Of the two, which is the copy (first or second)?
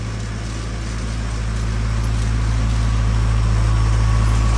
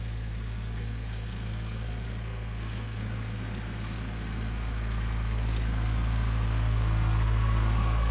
second